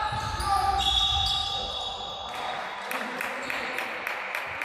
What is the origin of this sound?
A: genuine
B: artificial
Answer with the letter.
A